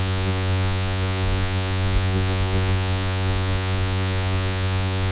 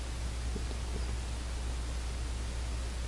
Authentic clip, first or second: second